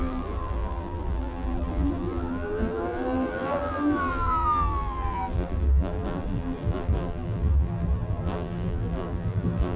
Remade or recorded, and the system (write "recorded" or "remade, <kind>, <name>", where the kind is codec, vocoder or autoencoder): remade, vocoder, BigVGAN v2